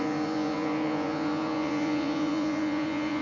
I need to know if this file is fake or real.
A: fake